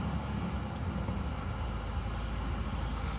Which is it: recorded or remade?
recorded